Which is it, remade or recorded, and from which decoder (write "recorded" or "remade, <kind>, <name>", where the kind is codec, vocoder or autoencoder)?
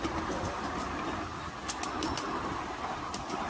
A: recorded